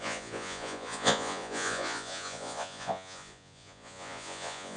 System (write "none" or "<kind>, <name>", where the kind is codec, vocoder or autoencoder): vocoder, Vocos